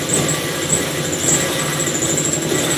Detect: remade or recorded recorded